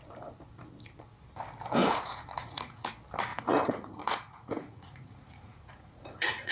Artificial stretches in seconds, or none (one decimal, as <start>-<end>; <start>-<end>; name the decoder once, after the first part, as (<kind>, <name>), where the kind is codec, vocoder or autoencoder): 1.8-2.9 (vocoder, Vocos); 3.3-6.5